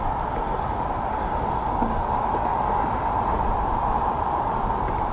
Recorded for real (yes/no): yes